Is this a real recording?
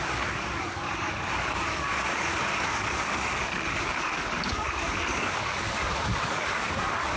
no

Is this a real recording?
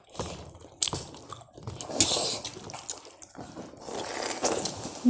yes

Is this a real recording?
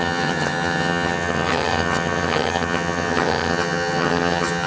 no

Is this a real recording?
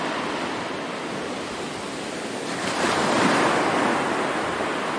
yes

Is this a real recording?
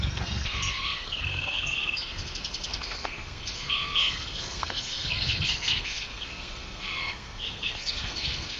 no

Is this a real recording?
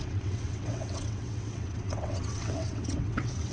no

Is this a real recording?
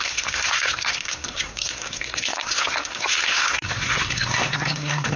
no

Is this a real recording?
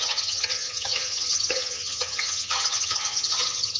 no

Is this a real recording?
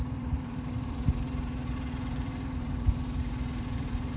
no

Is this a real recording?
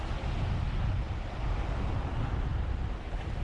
yes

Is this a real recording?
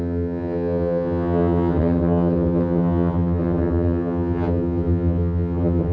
no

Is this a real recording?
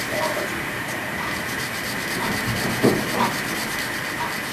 yes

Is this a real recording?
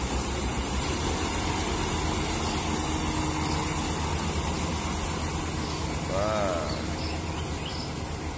yes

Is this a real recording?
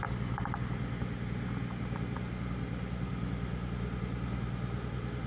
yes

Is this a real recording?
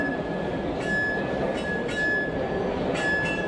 yes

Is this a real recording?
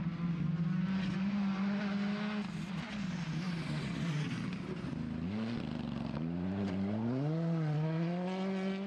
yes